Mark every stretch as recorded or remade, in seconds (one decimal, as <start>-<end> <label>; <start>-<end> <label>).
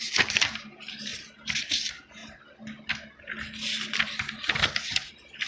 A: 0.0-1.1 remade; 1.1-1.7 recorded; 1.7-2.2 remade; 2.2-5.1 recorded; 5.1-5.5 remade